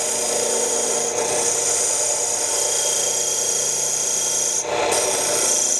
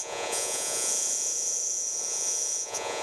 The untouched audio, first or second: first